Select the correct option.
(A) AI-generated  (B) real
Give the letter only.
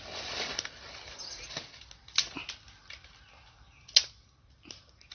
B